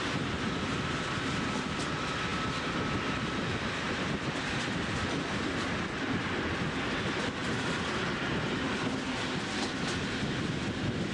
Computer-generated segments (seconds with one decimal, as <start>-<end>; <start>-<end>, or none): none